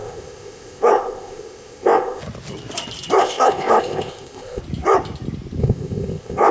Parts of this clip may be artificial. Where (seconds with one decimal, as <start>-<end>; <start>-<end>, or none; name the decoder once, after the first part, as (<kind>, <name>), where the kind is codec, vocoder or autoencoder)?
0.0-2.2 (codec, ZipCodec); 3.2-4.6; 5.6-6.5

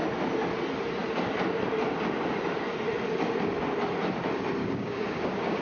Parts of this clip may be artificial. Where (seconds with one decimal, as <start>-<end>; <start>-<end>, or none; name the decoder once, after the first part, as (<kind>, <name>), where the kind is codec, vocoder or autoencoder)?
4.6-5.6 (codec, DAC)

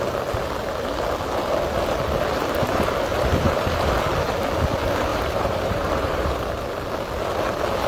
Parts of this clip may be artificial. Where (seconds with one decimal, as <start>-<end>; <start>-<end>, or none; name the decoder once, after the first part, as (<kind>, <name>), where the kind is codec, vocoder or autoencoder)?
3.1-3.9 (vocoder, BigVGAN v2); 5.1-6.3

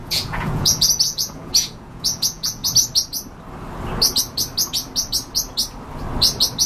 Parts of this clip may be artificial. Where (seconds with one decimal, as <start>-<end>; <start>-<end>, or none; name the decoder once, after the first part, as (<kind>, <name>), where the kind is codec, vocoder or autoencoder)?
0.0-2.6 (vocoder, Vocos)

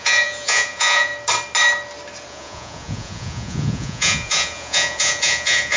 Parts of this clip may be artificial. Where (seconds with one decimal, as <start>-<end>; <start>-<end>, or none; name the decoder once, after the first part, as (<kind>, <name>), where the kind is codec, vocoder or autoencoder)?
0.0-1.1 (vocoder, Vocos); 2.3-5.8

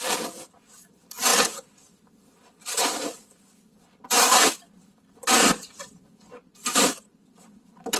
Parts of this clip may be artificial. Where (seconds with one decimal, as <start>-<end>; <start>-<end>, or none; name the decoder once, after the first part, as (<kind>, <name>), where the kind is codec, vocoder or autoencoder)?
none

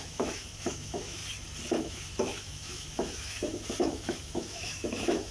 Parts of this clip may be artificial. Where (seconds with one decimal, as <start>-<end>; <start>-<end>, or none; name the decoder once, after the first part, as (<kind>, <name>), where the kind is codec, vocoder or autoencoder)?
0.0-1.2 (autoencoder, DAC-VAE); 1.8-5.3